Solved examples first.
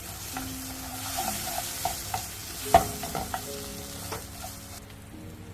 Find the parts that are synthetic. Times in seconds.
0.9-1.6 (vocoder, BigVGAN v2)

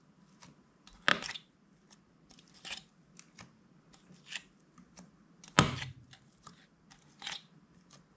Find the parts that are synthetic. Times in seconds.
none

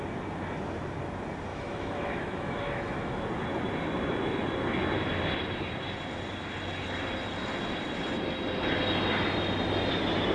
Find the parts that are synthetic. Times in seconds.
1.5-3.2 (autoencoder, DAC-VAE)

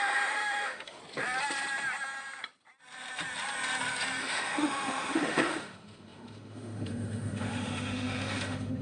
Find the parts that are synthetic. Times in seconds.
0.0-1.0 (autoencoder, DAC-VAE); 4.2-8.8